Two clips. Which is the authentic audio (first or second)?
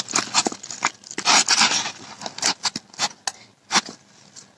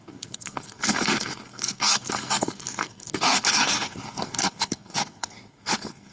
first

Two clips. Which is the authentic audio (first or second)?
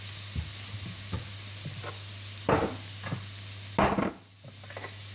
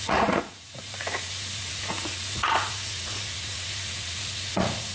first